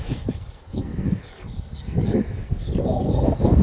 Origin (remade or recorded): remade